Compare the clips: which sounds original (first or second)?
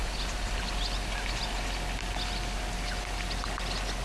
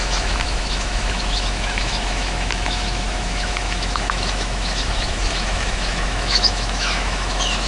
first